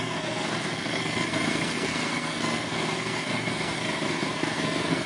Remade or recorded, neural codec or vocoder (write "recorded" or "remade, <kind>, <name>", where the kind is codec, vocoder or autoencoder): remade, codec, SNAC